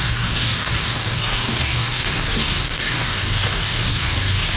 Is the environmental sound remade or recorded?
remade